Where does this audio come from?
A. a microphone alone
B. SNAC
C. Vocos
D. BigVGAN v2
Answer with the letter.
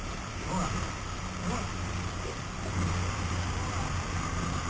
D